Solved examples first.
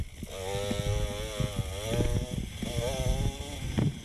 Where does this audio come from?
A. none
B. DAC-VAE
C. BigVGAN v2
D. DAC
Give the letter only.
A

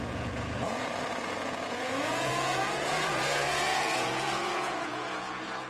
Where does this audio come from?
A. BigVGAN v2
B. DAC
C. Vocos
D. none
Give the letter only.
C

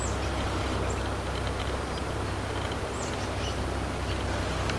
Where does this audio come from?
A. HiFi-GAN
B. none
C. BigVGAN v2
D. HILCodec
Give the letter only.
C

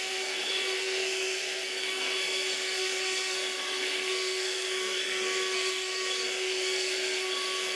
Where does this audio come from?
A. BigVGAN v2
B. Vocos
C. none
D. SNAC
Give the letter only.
D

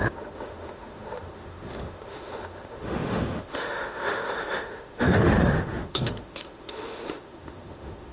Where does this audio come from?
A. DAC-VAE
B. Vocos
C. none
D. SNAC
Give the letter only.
A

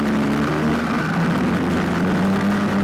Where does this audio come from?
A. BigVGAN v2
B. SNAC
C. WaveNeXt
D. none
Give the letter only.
D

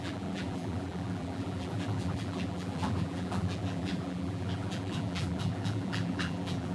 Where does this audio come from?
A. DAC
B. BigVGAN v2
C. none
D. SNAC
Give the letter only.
B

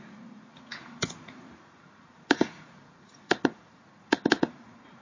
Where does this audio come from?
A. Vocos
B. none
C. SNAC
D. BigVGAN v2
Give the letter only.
A